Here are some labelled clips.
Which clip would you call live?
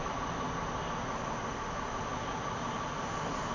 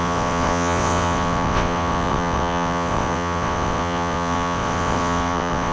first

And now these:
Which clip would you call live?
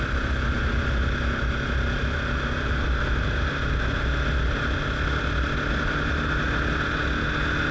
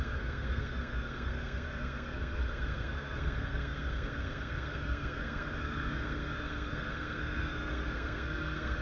first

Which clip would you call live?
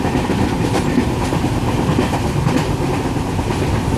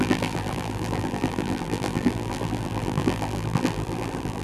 first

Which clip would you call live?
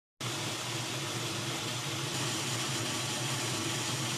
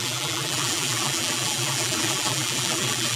first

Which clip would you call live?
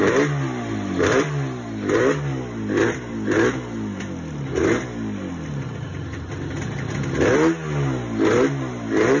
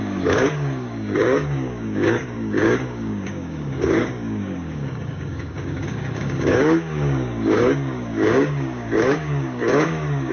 first